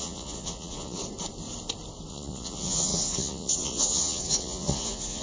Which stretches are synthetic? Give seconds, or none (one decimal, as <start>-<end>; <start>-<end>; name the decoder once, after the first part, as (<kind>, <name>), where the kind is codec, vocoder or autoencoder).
0.0-1.0 (vocoder, Vocos); 2.1-5.2